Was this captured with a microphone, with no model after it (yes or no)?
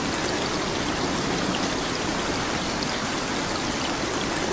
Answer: yes